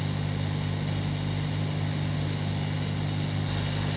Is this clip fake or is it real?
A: real